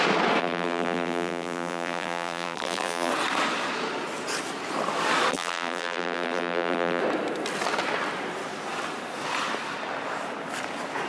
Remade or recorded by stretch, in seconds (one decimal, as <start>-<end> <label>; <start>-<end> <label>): 0.0-0.4 recorded; 0.4-3.1 remade; 3.1-5.3 recorded; 5.3-7.0 remade; 7.0-11.1 recorded